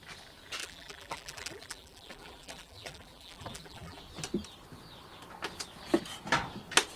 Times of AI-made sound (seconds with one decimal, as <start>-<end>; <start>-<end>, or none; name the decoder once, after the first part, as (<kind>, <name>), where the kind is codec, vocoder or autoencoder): 0.6-4.0 (vocoder, BigVGAN v2)